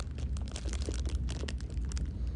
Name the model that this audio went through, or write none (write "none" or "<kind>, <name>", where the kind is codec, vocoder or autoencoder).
none